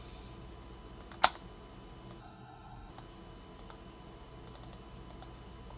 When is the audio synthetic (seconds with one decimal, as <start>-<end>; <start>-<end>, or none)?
2.2-2.9